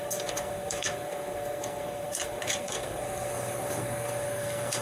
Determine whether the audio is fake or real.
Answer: fake